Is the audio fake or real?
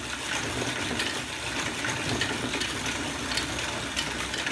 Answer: real